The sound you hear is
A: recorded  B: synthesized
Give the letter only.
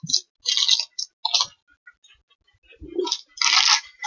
A